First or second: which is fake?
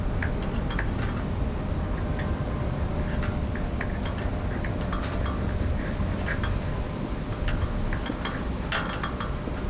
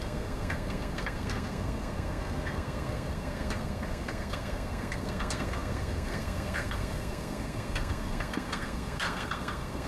second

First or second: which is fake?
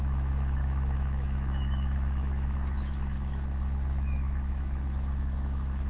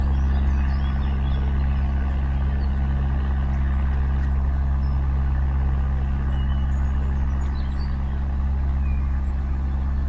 first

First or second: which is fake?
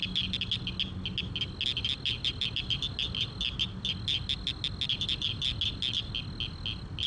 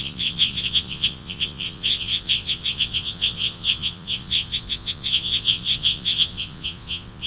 second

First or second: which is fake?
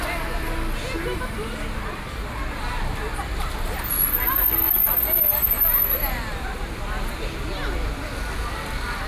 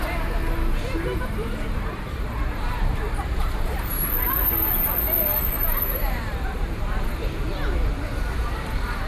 second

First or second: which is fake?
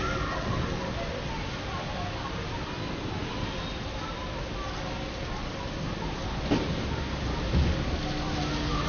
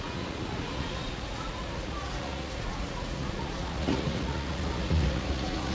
second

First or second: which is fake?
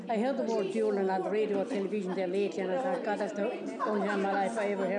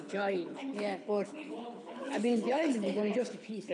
second